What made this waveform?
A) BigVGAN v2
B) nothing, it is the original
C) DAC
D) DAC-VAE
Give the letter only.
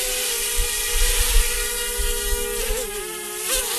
B